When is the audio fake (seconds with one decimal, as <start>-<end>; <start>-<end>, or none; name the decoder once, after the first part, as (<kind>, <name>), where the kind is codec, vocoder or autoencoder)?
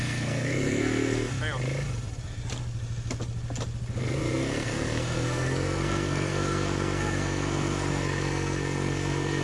0.0-1.3 (codec, SNAC); 4.0-9.4